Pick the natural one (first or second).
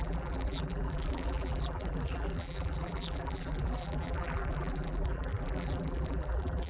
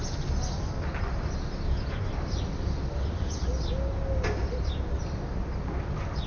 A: second